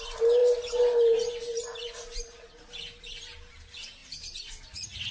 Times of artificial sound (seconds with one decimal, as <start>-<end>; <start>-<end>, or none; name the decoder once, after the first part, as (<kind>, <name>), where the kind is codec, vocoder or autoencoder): none